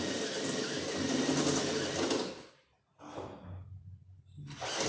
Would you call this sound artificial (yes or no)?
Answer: no